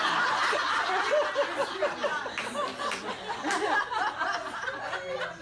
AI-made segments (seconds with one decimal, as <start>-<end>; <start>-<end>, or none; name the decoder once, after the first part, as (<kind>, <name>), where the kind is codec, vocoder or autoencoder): none